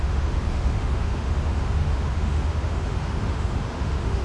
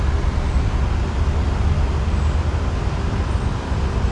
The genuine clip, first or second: second